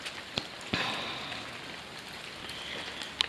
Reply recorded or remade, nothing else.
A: recorded